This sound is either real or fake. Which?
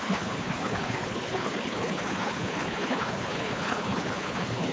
fake